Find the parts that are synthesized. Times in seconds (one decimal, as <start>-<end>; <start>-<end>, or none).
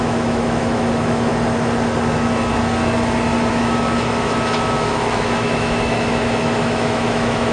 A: 0.0-1.3; 3.5-7.5